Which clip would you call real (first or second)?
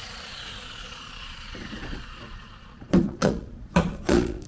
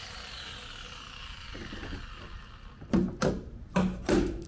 second